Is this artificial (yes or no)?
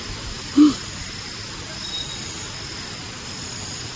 no